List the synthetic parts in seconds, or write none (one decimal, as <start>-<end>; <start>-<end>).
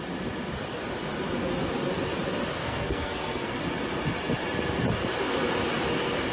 2.6-3.6